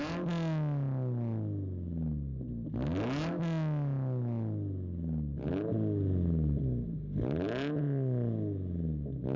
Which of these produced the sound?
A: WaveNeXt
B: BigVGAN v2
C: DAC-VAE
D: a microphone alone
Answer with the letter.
D